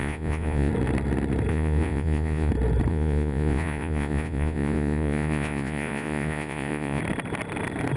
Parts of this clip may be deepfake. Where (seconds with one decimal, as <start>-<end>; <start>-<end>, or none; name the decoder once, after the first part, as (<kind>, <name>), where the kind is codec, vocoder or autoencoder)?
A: 0.0-0.7 (vocoder, Vocos); 1.5-2.5; 2.9-7.0